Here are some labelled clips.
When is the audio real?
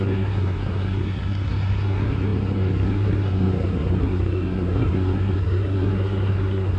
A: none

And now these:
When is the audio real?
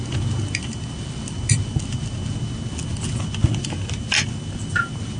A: 0.0-5.2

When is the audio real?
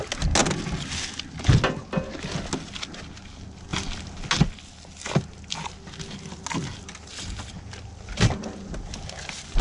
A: 0.0-3.7; 4.3-6.7; 8.0-9.6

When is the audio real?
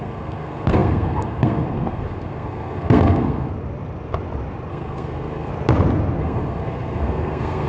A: 3.5-4.7; 5.5-6.2